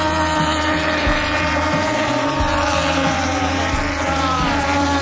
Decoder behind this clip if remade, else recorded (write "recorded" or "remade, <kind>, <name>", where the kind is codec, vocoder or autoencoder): remade, vocoder, BigVGAN v2